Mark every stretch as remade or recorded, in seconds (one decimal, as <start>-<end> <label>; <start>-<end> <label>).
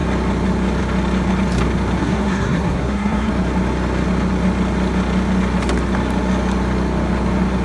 0.0-2.0 recorded; 2.0-3.3 remade; 3.3-7.6 recorded